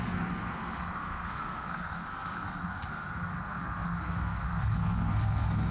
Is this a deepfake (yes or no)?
yes